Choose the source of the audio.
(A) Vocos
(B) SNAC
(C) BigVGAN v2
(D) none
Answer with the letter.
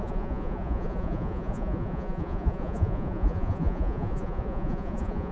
A